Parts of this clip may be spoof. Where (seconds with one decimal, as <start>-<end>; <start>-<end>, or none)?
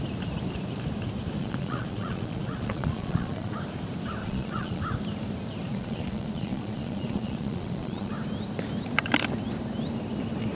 1.4-3.6; 4.2-4.8; 5.7-8.1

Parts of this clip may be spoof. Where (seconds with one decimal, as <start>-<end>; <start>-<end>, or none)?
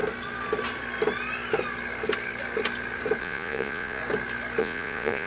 3.2-4.0; 4.6-5.3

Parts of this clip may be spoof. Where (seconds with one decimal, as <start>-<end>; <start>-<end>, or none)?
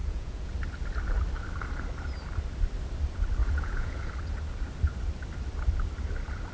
0.0-0.5; 3.4-4.1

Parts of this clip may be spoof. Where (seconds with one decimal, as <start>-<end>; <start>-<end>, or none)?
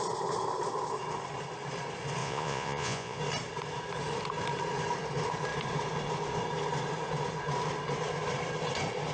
2.2-3.2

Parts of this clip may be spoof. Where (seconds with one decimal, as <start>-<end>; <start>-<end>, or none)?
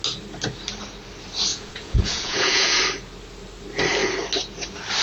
1.5-2.8